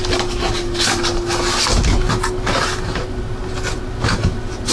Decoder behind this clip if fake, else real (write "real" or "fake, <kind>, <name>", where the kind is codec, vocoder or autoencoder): real